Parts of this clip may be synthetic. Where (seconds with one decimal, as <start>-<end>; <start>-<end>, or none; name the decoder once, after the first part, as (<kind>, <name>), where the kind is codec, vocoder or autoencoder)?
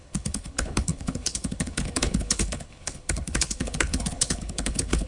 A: 0.0-5.1 (codec, HILCodec)